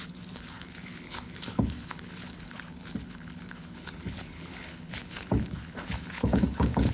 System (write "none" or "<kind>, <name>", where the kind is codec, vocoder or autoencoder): codec, HILCodec